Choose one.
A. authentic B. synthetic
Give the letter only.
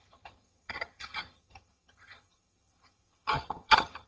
B